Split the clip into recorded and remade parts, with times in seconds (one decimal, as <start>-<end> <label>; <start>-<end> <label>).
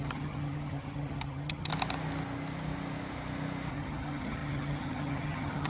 0.0-1.7 remade; 1.7-3.7 recorded; 3.7-5.7 remade